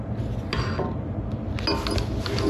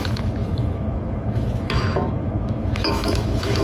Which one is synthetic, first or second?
second